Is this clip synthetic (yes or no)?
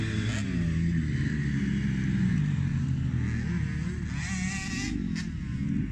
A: no